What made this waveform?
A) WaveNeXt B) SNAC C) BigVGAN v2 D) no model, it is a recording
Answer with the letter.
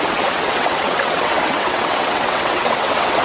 A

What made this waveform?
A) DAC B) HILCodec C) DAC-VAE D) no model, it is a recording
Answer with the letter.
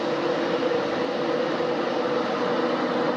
D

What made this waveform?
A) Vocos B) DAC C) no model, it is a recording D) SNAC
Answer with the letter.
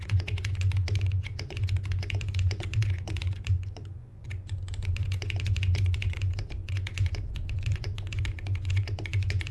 A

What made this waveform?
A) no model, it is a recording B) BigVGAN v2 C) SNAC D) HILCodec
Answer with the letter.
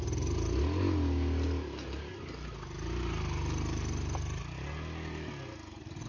A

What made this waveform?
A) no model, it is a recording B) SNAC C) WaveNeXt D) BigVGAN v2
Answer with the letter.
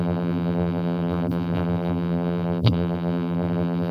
D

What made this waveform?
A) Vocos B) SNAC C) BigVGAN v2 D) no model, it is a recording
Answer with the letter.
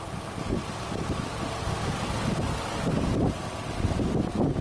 D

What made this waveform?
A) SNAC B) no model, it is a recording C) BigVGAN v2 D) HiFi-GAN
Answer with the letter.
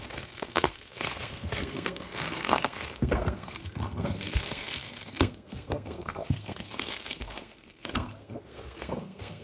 A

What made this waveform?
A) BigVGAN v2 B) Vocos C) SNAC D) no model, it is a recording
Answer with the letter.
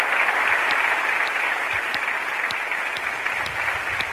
D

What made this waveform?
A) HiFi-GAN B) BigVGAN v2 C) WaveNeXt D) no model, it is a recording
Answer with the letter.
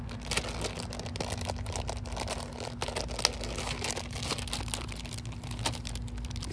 D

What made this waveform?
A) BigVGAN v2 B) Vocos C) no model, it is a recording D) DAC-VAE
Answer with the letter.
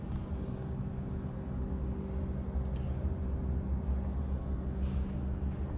C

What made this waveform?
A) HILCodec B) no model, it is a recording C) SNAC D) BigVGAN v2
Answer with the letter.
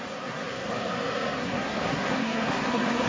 C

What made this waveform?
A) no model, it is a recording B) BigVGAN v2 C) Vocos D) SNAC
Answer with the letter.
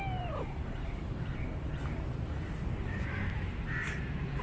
B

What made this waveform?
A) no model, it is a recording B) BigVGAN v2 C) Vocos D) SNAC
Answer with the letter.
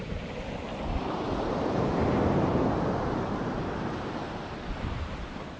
B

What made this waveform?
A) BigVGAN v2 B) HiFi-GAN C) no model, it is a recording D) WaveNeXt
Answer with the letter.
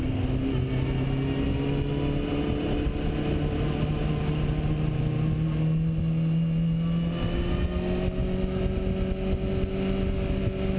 C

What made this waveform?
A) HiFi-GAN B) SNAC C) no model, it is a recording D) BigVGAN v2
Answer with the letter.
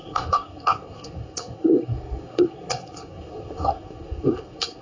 B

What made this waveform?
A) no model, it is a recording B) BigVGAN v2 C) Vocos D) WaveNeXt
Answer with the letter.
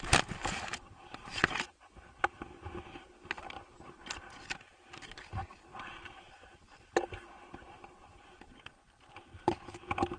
A